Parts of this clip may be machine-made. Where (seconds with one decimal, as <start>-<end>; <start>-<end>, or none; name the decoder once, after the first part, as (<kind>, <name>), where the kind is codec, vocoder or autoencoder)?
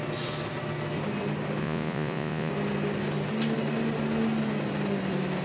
1.6-2.5 (vocoder, Vocos)